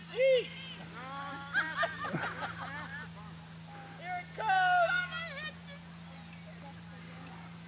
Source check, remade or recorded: recorded